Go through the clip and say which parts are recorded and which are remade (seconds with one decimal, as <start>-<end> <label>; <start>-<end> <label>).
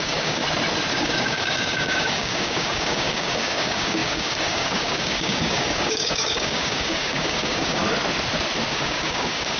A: 0.0-0.4 remade; 0.4-0.9 recorded; 0.9-7.8 remade; 7.8-8.7 recorded; 8.7-9.6 remade